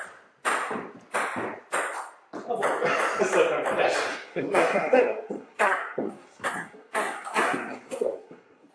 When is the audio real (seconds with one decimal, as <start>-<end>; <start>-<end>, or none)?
0.0-4.1